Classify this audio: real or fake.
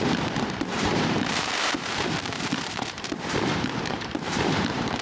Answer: fake